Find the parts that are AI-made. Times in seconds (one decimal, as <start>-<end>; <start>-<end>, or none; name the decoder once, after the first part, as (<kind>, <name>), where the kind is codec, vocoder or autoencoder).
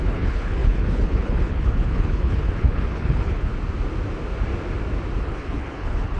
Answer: 0.0-3.5 (codec, HILCodec); 5.2-6.2